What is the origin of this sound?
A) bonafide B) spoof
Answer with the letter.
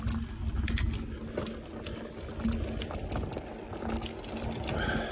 A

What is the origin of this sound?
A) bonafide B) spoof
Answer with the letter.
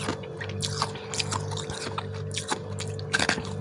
A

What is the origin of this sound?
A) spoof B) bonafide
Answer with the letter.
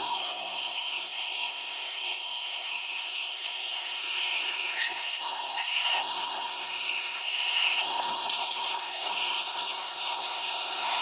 A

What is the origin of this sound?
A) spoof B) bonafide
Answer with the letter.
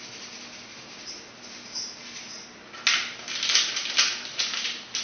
B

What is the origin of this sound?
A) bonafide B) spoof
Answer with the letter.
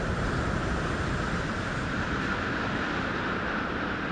A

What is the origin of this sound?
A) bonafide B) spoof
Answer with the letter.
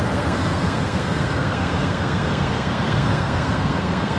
B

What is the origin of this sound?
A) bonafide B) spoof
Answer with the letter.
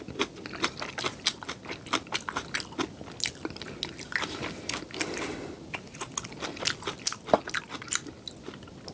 A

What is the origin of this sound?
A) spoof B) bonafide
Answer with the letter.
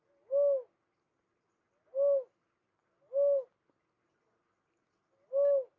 B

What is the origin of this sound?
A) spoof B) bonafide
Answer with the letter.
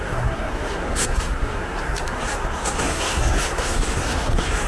A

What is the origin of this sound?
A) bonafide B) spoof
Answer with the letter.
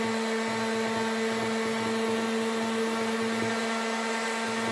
A